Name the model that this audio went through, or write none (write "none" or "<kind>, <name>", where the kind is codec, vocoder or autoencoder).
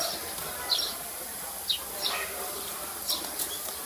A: none